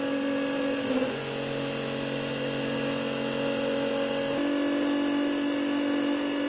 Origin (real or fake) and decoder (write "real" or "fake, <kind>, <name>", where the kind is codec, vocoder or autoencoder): real